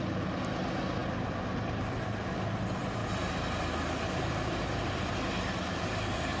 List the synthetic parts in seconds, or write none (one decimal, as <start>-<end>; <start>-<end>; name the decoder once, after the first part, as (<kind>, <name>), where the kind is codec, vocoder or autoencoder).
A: none